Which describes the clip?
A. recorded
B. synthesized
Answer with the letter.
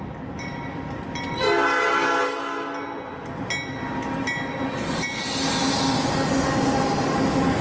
A